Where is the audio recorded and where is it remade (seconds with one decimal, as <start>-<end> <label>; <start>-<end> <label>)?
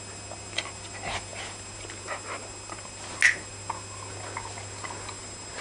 0.0-5.6 recorded